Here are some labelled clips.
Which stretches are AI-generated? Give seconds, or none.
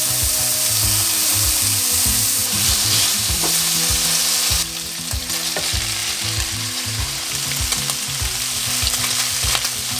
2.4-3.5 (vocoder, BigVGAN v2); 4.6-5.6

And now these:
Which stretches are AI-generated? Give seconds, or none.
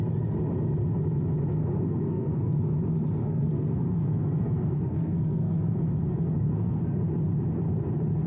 1.6-2.6 (codec, SNAC); 3.2-7.0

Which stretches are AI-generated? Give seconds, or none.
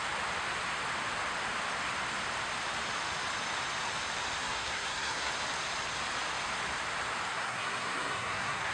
4.4-5.3 (codec, SNAC); 7.3-8.7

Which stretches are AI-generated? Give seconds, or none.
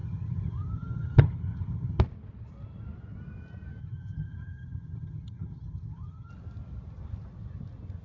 0.0-2.0 (vocoder, HiFi-GAN); 3.8-6.3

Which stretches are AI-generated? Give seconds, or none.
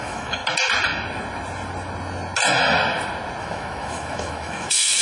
0.0-0.4 (autoencoder, DAC-VAE); 3.4-5.0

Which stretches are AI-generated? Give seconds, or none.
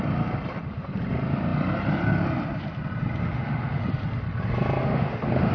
3.2-3.8 (autoencoder, DAC-VAE); 4.8-5.5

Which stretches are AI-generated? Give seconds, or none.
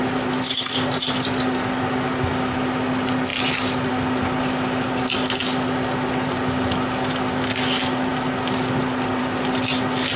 none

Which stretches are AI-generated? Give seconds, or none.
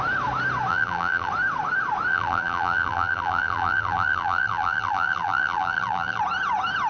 0.7-1.3 (vocoder, BigVGAN v2); 2.1-6.2